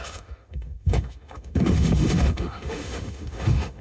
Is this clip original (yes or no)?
no